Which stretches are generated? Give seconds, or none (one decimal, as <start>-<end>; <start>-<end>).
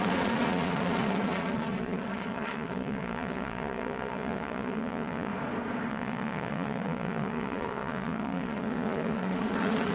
0.0-5.3; 5.9-9.9